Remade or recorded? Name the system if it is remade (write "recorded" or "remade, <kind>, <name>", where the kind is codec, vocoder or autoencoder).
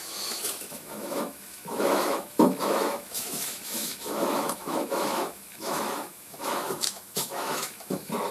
remade, autoencoder, DAC-VAE